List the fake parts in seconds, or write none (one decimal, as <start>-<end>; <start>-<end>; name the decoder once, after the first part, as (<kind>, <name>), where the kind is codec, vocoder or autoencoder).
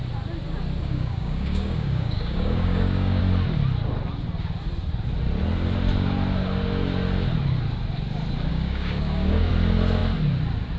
0.8-3.2 (codec, DAC); 8.5-9.5